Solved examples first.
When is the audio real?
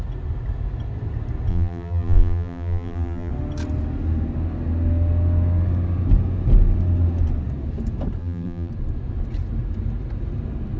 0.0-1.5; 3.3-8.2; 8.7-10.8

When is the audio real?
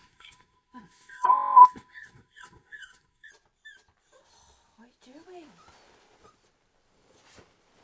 3.3-7.8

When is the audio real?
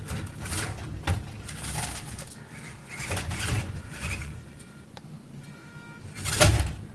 0.0-2.8; 5.7-6.9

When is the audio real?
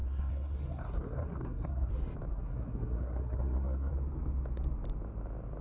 1.9-2.3; 3.9-5.6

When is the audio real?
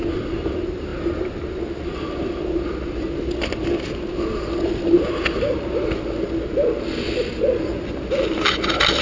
0.0-9.0